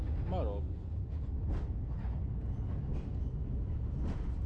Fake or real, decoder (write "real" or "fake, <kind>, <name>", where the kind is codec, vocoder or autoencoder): real